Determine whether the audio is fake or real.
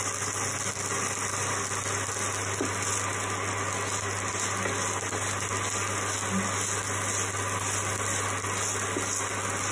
real